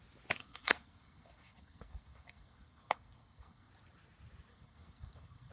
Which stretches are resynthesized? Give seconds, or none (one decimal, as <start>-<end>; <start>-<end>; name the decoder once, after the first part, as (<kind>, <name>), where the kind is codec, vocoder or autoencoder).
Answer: 0.4-3.7 (codec, SNAC); 4.5-5.5